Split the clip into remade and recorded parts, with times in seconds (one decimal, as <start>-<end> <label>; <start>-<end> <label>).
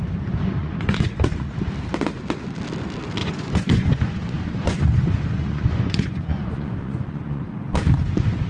0.0-0.6 recorded; 0.6-1.5 remade; 1.5-3.2 recorded; 3.2-7.4 remade; 7.4-8.5 recorded